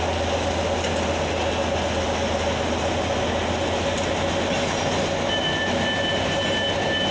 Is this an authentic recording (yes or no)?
yes